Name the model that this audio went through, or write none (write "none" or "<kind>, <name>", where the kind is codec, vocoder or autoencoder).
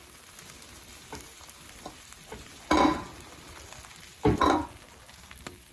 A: none